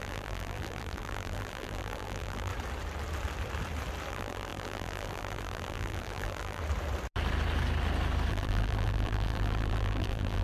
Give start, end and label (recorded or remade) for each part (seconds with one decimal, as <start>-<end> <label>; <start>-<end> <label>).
0.0-2.5 remade; 2.5-4.1 recorded; 4.1-6.6 remade; 6.6-8.3 recorded; 8.3-10.4 remade